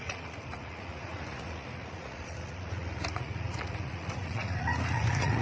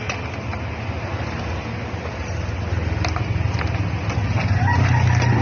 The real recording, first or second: second